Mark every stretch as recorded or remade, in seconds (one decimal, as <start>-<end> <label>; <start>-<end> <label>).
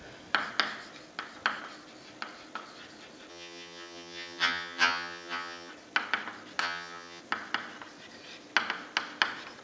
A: 0.0-3.3 recorded; 3.3-5.7 remade; 5.7-6.6 recorded; 6.6-7.2 remade; 7.2-9.6 recorded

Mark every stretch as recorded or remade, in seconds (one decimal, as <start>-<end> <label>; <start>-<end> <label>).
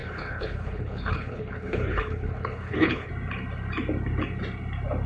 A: 0.0-3.1 remade; 3.1-5.1 recorded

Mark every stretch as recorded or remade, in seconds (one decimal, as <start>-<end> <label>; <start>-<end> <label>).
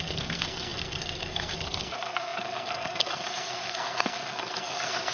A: 0.0-5.1 remade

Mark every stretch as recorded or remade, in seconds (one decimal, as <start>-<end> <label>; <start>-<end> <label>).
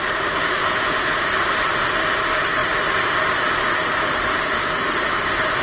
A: 0.0-0.6 recorded; 0.6-1.3 remade; 1.3-5.6 recorded